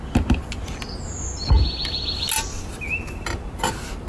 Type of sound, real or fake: real